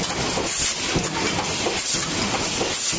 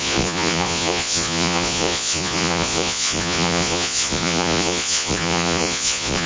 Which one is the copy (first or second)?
second